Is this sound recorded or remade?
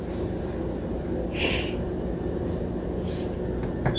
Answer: recorded